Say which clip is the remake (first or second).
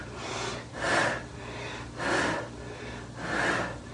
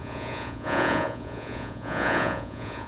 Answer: second